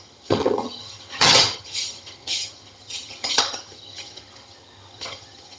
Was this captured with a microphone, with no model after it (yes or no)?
no